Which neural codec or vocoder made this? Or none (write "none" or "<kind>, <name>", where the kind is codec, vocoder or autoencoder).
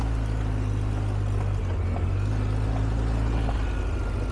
none